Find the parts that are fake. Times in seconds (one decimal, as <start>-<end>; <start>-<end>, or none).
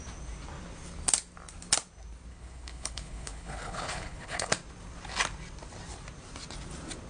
2.3-4.5